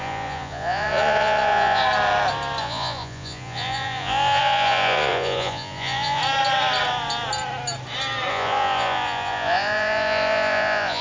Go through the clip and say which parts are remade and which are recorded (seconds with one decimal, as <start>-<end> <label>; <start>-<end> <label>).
0.0-1.8 remade; 1.8-2.6 recorded; 2.6-6.2 remade; 6.2-8.3 recorded; 8.3-11.0 remade